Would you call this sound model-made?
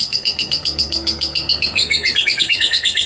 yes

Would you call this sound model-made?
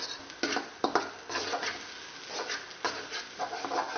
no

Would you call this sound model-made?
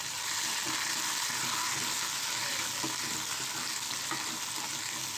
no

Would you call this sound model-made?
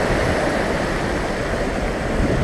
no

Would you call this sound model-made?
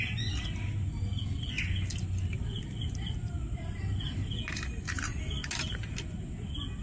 no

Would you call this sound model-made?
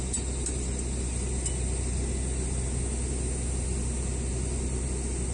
no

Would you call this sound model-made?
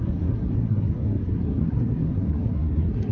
yes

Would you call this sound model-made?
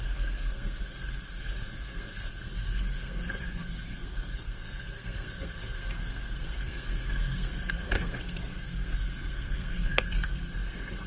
yes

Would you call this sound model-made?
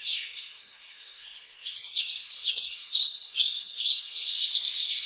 yes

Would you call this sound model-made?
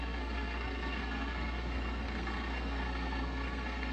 yes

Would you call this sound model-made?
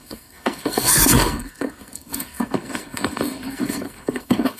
yes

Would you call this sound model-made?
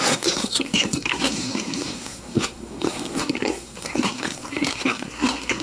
yes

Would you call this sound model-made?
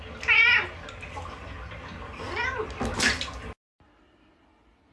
no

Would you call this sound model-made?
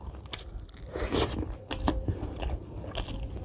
no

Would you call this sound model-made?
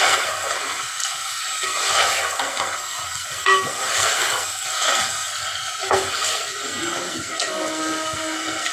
yes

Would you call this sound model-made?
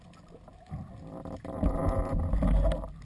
no